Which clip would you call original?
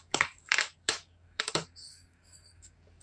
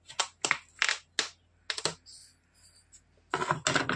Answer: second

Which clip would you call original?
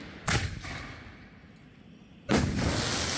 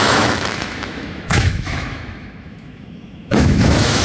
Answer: first